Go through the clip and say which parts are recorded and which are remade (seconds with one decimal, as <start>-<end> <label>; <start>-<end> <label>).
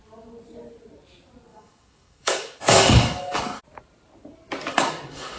0.0-1.5 recorded; 1.5-3.6 remade; 3.6-4.7 recorded; 4.7-5.4 remade